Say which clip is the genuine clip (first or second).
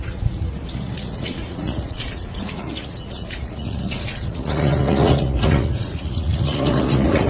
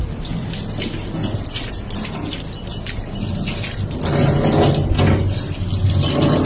second